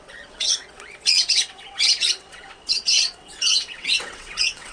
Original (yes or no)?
no